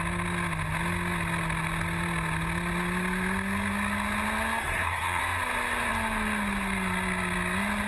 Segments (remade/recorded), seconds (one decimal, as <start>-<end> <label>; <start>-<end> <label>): 0.0-4.6 recorded; 4.6-5.2 remade; 5.2-7.9 recorded